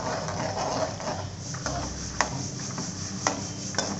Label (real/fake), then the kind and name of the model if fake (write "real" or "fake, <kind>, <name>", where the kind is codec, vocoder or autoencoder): real